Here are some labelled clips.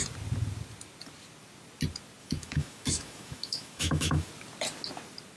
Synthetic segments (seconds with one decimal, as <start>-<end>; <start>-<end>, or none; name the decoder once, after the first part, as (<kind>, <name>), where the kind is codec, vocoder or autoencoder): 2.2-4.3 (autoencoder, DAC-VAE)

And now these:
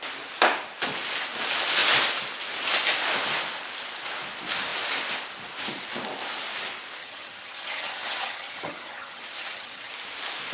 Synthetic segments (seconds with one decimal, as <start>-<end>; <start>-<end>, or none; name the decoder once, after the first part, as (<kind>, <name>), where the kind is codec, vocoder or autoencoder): 7.0-9.9 (vocoder, HiFi-GAN)

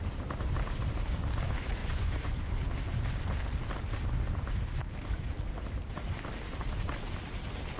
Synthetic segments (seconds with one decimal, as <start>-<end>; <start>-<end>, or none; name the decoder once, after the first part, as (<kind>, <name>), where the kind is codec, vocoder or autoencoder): 1.8-2.5 (vocoder, Vocos)

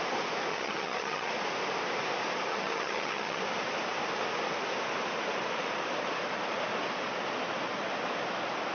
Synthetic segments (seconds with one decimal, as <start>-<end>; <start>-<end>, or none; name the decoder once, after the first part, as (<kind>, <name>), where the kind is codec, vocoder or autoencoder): 0.5-1.3 (vocoder, HiFi-GAN); 2.5-3.4